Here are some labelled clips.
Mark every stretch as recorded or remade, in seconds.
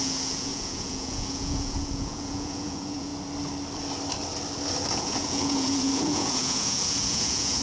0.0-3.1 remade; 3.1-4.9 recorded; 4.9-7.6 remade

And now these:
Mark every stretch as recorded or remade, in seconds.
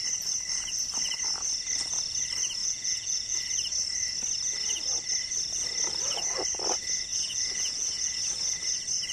0.0-2.6 recorded; 2.6-3.4 remade; 3.4-7.1 recorded; 7.1-8.2 remade; 8.2-9.1 recorded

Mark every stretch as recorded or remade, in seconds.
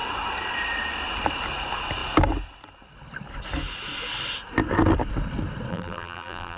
0.0-5.7 recorded; 5.7-6.6 remade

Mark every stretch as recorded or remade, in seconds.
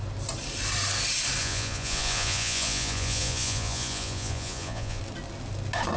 0.0-1.4 recorded; 1.4-5.0 remade; 5.0-6.0 recorded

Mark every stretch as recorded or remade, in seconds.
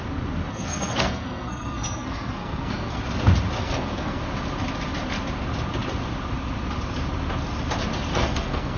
0.0-0.5 recorded; 0.5-3.0 remade; 3.0-3.6 recorded; 3.6-4.2 remade; 4.2-8.1 recorded; 8.1-8.8 remade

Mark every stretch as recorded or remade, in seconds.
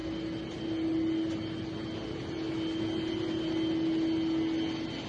0.0-5.1 recorded